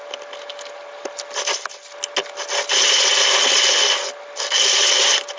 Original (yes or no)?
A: yes